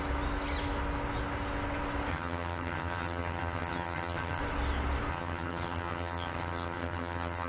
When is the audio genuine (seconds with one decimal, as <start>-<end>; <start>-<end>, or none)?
0.0-2.1; 4.4-5.1